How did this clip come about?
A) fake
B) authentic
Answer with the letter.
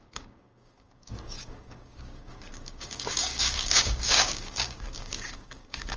A